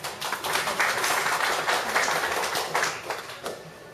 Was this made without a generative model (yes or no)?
yes